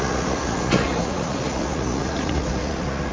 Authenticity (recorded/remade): remade